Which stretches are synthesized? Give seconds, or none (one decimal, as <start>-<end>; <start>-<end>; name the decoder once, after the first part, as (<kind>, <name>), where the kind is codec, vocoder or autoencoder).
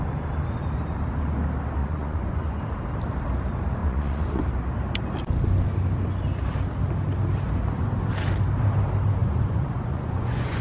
1.8-2.6 (vocoder, Vocos); 3.8-4.4; 9.2-10.6